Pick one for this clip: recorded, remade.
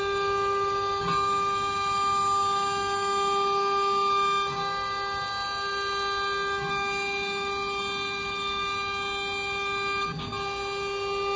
recorded